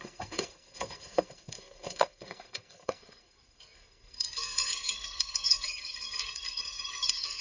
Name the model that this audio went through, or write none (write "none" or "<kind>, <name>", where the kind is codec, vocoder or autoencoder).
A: codec, SNAC